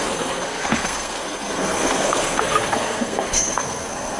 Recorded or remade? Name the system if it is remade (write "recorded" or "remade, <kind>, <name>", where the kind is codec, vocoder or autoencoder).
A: remade, codec, SNAC